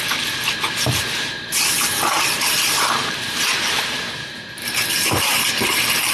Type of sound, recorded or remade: remade